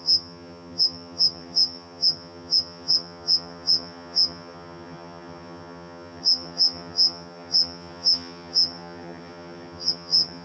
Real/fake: fake